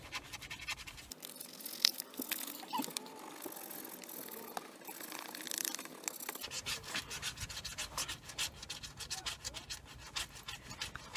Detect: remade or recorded recorded